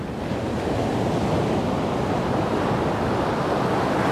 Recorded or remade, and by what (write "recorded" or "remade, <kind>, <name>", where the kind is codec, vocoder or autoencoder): recorded